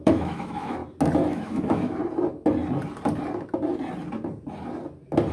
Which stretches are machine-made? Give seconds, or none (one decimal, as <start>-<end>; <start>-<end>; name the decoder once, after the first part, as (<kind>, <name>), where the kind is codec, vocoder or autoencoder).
0.0-0.8 (autoencoder, DAC-VAE); 1.3-2.0